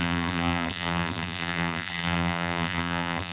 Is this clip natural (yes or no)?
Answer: no